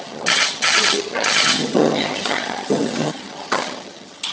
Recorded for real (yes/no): no